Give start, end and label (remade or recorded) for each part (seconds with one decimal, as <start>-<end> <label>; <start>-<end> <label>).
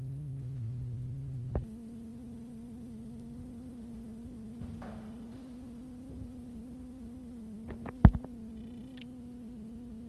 0.0-10.1 recorded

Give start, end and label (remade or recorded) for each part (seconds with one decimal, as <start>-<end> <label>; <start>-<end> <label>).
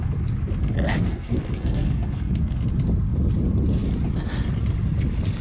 0.0-0.6 recorded; 0.6-2.6 remade; 2.6-5.4 recorded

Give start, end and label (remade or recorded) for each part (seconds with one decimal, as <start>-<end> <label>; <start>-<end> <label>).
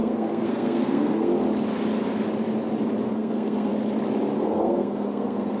0.0-1.3 remade; 1.3-3.1 recorded; 3.1-3.7 remade; 3.7-4.4 recorded; 4.4-5.6 remade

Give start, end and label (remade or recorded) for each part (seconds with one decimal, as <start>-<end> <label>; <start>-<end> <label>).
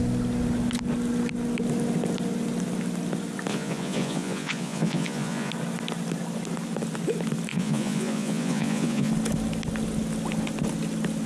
0.0-3.5 recorded; 3.5-5.5 remade; 5.5-7.5 recorded; 7.5-9.1 remade; 9.1-11.3 recorded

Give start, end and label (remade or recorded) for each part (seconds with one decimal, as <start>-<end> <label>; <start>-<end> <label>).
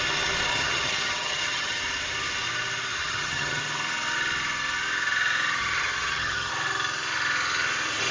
0.0-0.5 recorded; 0.5-1.8 remade; 1.8-2.9 recorded; 2.9-3.6 remade; 3.6-5.6 recorded; 5.6-6.5 remade; 6.5-8.1 recorded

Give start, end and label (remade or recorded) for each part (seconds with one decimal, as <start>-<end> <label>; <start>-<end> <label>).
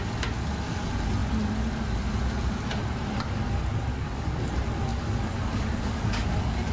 0.0-3.9 recorded; 3.9-4.4 remade; 4.4-4.9 recorded; 4.9-6.7 remade